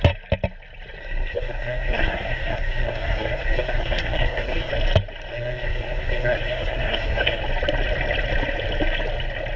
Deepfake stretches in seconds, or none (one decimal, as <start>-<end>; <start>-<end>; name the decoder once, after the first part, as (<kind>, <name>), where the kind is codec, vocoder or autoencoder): 1.0-4.7 (codec, SNAC); 5.3-7.4